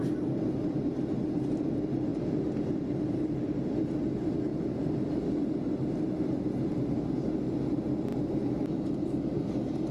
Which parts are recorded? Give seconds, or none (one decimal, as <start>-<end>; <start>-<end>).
0.0-4.5; 6.5-8.1; 9.4-9.9